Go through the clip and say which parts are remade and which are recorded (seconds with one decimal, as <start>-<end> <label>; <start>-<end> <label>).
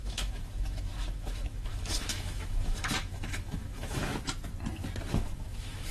0.0-4.0 remade; 4.0-5.1 recorded; 5.1-5.9 remade